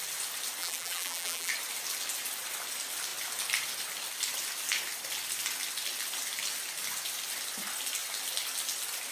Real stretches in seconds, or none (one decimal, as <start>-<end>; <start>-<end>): 0.0-0.6; 1.5-9.1